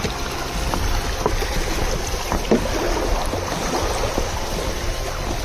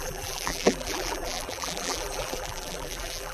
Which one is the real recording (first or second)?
first